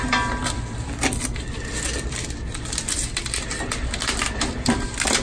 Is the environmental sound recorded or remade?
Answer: recorded